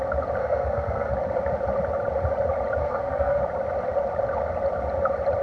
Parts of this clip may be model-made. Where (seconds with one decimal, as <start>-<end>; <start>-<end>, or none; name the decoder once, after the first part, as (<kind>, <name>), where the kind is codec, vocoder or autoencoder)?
0.4-1.1 (codec, SNAC); 2.8-3.4